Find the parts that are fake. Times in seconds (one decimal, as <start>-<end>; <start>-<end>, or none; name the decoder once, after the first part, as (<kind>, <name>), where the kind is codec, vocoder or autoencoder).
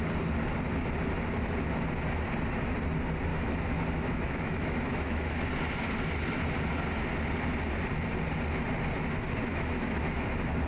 3.3-5.5 (autoencoder, DAC-VAE); 9.5-10.2